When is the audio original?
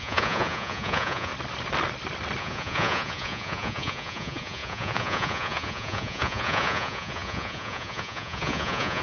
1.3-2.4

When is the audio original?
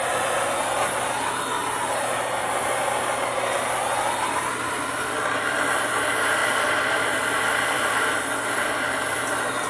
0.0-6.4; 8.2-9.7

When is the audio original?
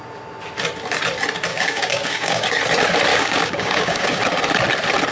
0.0-1.5; 2.6-3.1; 4.2-5.1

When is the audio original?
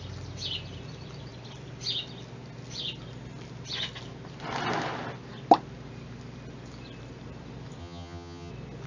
0.0-7.8; 8.5-8.9